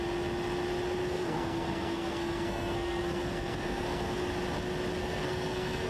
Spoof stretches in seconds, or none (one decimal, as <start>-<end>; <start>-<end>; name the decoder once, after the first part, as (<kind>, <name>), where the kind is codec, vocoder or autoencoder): 1.0-4.3 (codec, SNAC); 5.0-5.9